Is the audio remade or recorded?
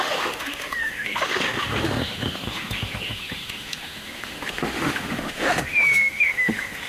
remade